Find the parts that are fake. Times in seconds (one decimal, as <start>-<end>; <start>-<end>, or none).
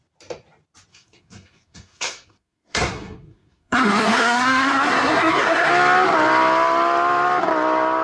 0.9-5.7